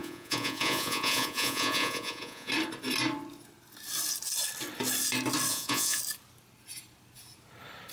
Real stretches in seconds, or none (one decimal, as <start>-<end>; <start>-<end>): 2.5-5.5; 6.0-7.9